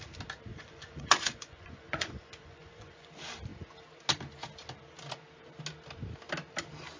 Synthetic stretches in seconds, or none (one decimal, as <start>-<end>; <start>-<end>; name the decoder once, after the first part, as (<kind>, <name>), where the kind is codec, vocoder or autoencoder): 0.5-3.1 (vocoder, Vocos)